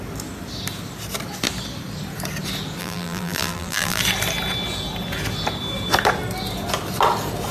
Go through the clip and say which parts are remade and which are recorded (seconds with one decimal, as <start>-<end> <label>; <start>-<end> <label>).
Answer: 0.0-2.8 recorded; 2.8-4.0 remade; 4.0-7.5 recorded